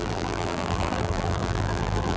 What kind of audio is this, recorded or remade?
remade